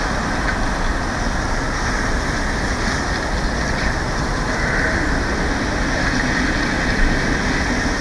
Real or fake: real